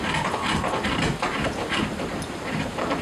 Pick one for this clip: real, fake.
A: real